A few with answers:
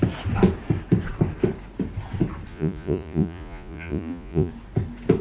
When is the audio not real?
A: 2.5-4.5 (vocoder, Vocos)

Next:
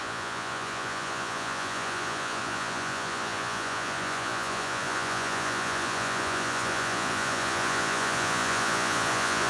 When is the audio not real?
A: 0.0-9.5 (vocoder, Vocos)